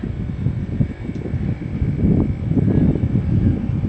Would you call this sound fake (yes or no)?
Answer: no